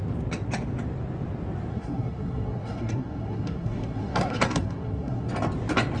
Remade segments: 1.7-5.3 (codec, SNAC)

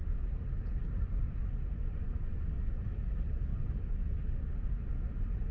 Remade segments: none